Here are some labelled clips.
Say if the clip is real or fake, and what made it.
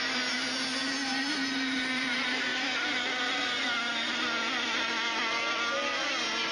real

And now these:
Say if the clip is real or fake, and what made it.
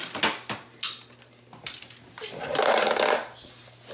real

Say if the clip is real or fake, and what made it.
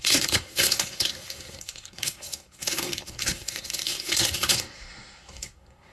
fake, codec, SNAC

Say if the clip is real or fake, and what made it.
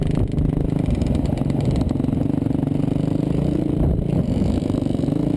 real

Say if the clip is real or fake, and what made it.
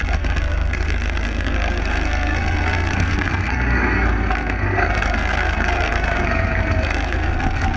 fake, codec, SNAC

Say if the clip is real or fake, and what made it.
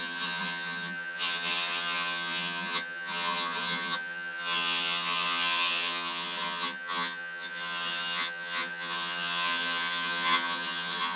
fake, vocoder, HiFi-GAN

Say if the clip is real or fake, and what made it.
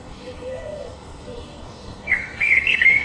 fake, codec, SNAC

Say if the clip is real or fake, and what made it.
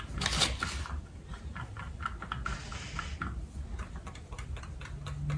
real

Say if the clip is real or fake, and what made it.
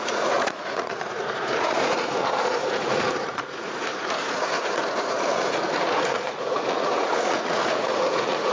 fake, vocoder, Vocos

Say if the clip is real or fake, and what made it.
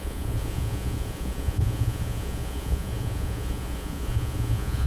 fake, vocoder, Vocos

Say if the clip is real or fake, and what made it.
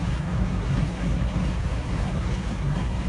fake, codec, SNAC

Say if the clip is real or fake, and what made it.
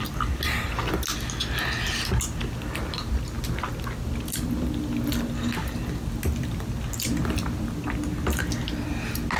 real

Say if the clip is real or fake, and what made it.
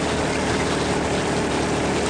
real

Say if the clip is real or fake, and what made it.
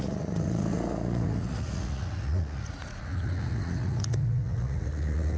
fake, vocoder, Vocos